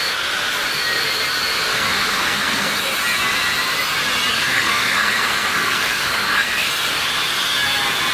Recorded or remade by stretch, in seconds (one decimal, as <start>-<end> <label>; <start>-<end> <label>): 0.0-1.7 recorded; 1.7-2.8 remade; 2.8-4.3 recorded; 4.3-6.7 remade; 6.7-8.1 recorded